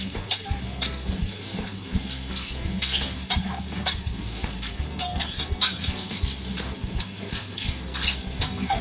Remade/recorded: remade